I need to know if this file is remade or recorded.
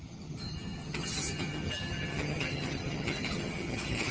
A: remade